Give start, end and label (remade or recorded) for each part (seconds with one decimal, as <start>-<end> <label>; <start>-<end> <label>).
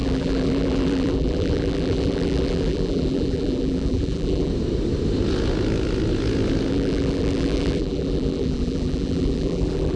0.0-4.5 remade; 4.5-6.7 recorded; 6.7-10.0 remade